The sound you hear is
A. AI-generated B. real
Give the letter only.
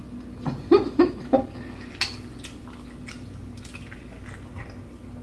B